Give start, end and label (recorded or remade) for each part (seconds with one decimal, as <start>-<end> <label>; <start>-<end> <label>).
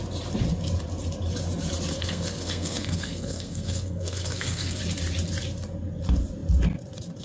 0.0-1.9 recorded; 1.9-4.8 remade; 4.8-7.2 recorded